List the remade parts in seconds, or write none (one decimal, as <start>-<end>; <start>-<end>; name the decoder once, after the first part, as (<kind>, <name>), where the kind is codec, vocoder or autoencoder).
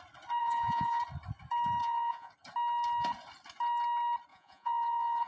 0.4-1.0 (vocoder, Vocos); 1.8-2.3; 4.3-5.3